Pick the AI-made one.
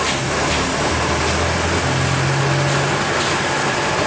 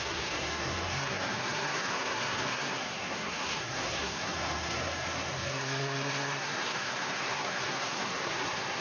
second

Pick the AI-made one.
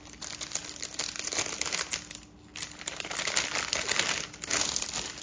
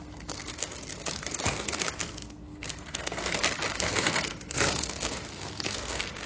second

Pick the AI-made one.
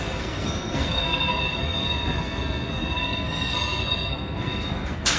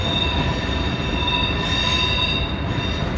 first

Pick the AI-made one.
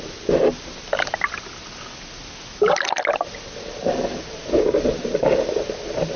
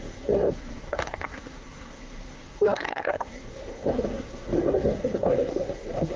second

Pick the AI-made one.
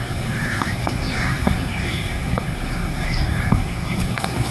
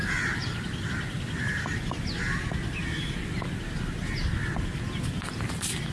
first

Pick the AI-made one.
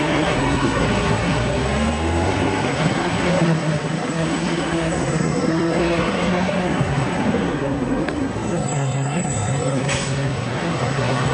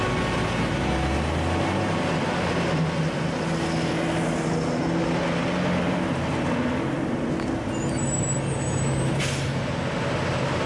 first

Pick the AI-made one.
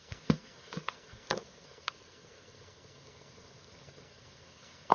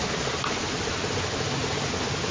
first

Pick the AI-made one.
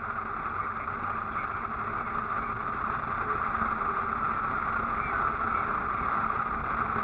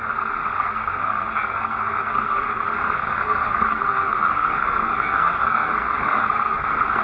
second